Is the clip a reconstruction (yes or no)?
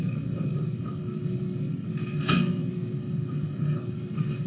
yes